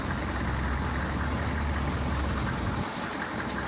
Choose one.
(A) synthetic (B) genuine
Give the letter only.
B